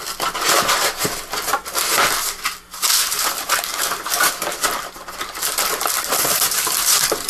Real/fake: real